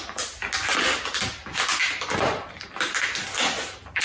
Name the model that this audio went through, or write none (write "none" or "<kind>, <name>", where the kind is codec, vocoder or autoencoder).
none